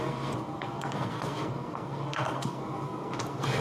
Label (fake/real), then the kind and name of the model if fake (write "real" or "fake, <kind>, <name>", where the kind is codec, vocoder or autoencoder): fake, codec, SNAC